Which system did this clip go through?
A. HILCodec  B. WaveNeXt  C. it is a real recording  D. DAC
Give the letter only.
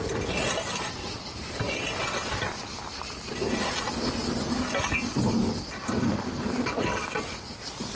C